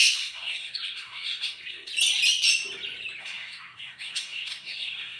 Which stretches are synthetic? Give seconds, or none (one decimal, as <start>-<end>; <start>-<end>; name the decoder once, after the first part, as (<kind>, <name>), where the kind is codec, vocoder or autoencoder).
0.0-1.9 (codec, SNAC); 3.2-5.2